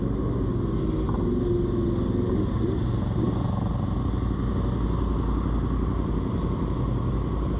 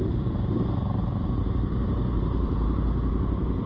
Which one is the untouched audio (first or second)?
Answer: first